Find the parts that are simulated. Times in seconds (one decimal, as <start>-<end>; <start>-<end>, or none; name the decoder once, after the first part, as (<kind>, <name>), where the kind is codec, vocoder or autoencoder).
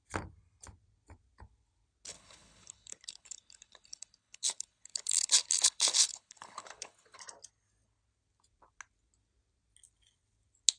2.1-7.2 (codec, HILCodec)